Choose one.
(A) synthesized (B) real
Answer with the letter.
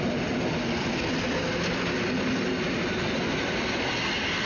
B